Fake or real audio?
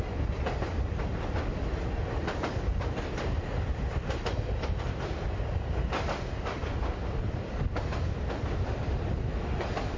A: real